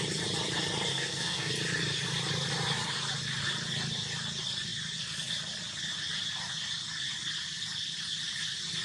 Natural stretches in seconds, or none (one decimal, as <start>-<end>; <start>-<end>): 0.0-0.9; 1.5-8.8